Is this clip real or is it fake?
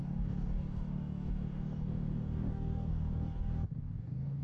fake